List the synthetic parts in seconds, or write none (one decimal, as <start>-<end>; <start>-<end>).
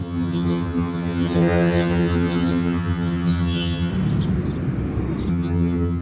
0.0-3.9; 5.3-6.0